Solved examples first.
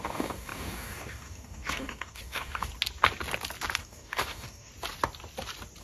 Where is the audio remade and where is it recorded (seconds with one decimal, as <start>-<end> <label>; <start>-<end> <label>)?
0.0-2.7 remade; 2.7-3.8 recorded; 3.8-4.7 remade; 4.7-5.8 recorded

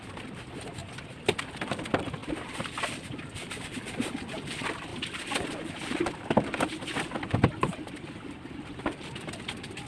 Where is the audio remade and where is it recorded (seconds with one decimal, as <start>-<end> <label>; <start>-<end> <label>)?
0.0-9.9 recorded

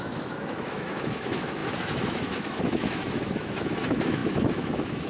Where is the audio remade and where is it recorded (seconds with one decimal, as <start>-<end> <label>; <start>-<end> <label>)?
0.0-5.1 remade

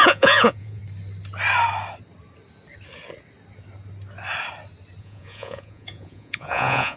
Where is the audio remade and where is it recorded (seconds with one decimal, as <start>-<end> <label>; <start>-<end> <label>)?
0.0-0.8 remade; 0.8-5.0 recorded; 5.0-7.0 remade